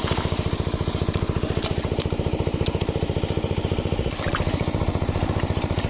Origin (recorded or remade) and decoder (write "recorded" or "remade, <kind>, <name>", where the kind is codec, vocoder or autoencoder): remade, vocoder, BigVGAN v2